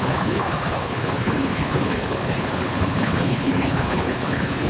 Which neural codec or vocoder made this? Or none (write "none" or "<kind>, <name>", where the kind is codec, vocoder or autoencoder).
codec, HILCodec